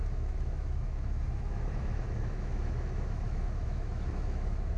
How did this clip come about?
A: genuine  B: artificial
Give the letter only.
B